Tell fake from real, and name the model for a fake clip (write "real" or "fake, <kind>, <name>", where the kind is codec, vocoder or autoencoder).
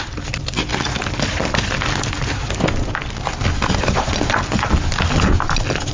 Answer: real